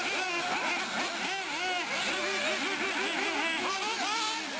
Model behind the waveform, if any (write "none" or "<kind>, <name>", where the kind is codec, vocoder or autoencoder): none